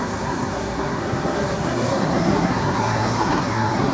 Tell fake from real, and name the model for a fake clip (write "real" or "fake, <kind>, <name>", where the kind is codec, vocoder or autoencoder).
fake, codec, SNAC